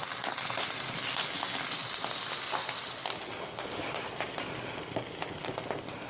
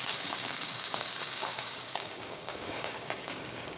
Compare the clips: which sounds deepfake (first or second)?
second